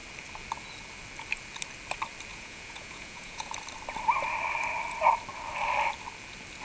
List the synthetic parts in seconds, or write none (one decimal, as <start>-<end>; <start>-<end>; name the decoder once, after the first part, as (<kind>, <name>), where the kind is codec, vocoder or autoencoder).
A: 2.3-3.5 (vocoder, Vocos)